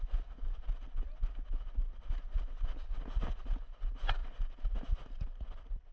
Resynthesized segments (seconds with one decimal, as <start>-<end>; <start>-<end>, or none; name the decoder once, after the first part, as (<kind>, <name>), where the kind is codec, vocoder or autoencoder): none